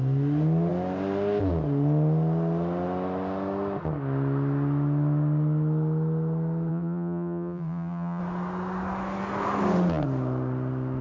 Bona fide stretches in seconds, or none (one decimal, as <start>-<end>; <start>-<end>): 0.0-6.7; 8.2-11.0